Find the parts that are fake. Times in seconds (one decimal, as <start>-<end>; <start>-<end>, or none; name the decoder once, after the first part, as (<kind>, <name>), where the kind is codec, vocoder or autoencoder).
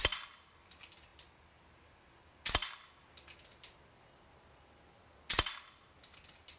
none